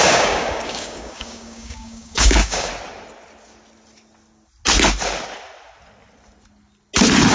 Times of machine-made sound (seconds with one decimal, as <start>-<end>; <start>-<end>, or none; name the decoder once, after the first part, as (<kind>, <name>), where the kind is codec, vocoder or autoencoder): 0.0-2.7 (codec, DAC)